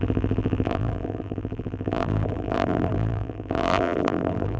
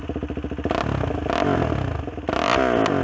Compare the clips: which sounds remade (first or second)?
first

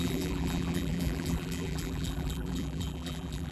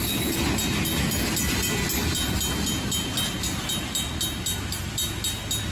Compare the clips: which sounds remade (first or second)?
first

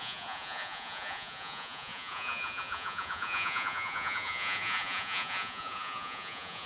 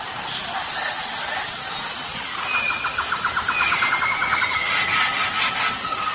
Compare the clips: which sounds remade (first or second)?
first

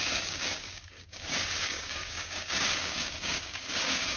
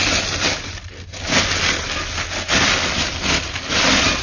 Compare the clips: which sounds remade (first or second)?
first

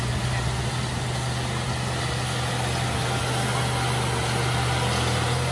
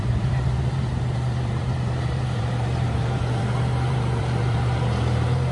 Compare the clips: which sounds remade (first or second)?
second